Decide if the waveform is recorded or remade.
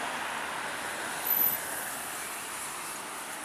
recorded